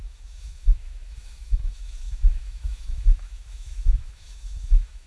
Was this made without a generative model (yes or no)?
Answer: no